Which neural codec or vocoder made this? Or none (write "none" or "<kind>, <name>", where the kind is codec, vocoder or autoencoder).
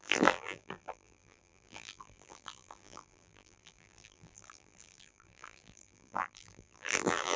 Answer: vocoder, BigVGAN v2